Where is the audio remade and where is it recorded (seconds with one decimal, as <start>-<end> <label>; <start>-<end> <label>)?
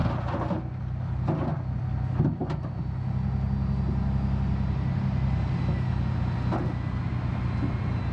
0.0-8.1 recorded